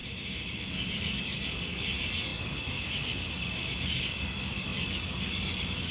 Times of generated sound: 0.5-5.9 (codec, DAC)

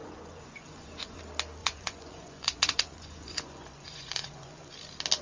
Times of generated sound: 0.0-1.2 (vocoder, Vocos); 1.6-4.7

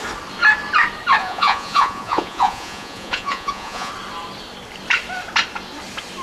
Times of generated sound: 1.2-3.9 (vocoder, Vocos)

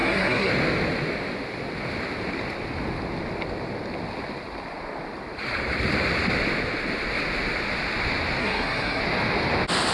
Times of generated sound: 0.0-0.5 (codec, SNAC); 8.4-9.0

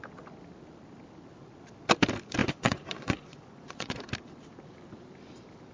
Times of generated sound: 2.4-4.0 (vocoder, Vocos)